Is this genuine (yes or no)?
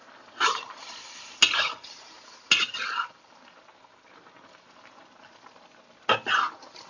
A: yes